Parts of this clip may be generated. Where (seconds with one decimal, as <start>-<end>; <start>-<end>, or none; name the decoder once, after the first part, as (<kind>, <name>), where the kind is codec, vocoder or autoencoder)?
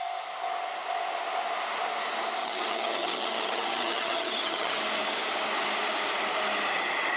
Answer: 2.4-4.8 (vocoder, HiFi-GAN)